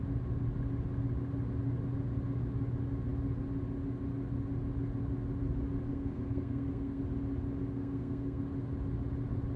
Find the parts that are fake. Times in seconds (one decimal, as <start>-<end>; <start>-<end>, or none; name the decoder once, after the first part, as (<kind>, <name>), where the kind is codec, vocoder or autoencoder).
5.9-7.0 (codec, SNAC); 7.7-8.4